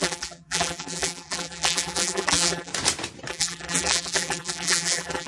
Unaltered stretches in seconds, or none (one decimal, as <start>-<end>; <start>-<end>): 2.7-3.3